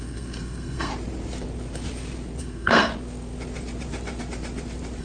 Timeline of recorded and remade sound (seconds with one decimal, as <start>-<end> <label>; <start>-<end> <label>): 0.0-0.9 remade; 0.9-2.4 recorded; 2.4-2.9 remade; 2.9-5.0 recorded